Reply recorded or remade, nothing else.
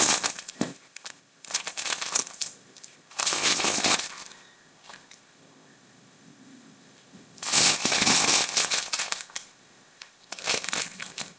remade